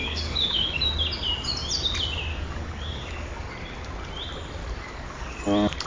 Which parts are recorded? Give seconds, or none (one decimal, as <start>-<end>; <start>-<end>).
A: 0.9-2.3; 3.5-4.6; 5.4-5.9